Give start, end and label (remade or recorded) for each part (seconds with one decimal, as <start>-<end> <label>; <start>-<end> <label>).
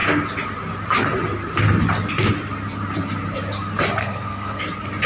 0.0-4.0 recorded; 4.0-4.6 remade; 4.6-5.1 recorded